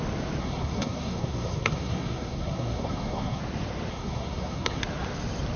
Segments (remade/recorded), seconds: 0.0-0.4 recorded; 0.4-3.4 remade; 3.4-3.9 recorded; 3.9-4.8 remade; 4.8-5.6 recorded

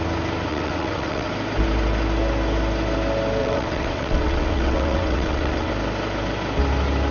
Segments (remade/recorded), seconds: 0.0-0.5 recorded; 0.5-1.3 remade; 1.3-3.4 recorded; 3.4-5.7 remade; 5.7-7.1 recorded

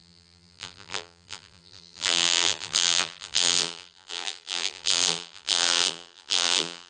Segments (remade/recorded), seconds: 0.0-6.9 remade

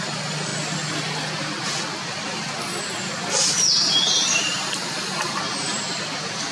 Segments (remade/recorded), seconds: 0.0-0.5 remade; 0.5-4.4 recorded; 4.4-6.5 remade

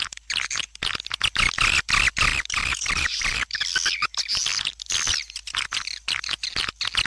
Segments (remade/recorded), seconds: 0.0-2.3 recorded; 2.3-3.6 remade; 3.6-7.1 recorded

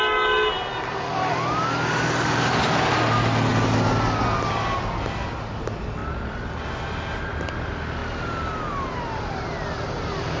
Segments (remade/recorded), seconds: 0.0-10.4 recorded

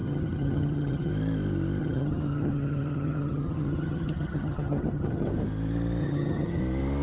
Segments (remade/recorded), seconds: 0.0-1.1 remade; 1.1-1.8 recorded; 1.8-5.3 remade; 5.3-6.0 recorded; 6.0-6.6 remade; 6.6-7.0 recorded